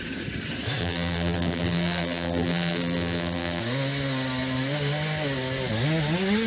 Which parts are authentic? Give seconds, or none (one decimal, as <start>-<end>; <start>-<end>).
0.0-0.8; 3.6-6.5